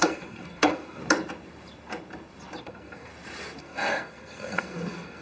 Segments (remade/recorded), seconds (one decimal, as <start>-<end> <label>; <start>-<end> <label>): 0.0-1.0 remade; 1.0-2.6 recorded; 2.6-3.1 remade; 3.1-3.6 recorded; 3.6-5.2 remade